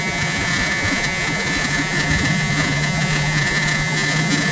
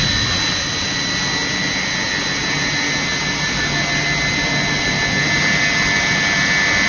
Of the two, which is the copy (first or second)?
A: first